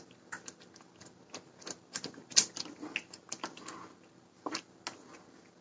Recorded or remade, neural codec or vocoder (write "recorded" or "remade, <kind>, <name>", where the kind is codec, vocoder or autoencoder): recorded